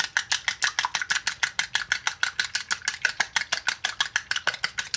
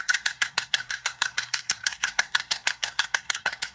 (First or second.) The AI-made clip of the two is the second